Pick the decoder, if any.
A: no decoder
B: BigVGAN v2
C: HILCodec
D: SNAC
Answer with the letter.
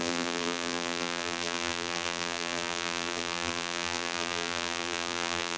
B